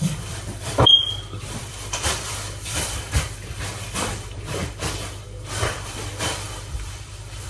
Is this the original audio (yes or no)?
no